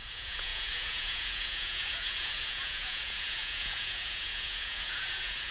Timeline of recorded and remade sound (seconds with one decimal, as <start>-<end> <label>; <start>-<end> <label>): 0.0-5.5 remade